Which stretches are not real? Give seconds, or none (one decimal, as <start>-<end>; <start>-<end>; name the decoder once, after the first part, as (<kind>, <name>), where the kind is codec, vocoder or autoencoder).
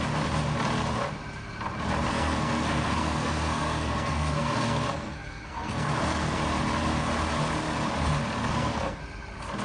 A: 2.1-6.4 (codec, SNAC); 8.4-9.0